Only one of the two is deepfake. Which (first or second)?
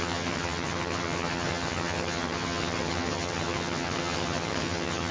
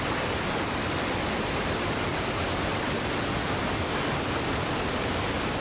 first